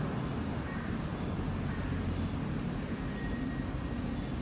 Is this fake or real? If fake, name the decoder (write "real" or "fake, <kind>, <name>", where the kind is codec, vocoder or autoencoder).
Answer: real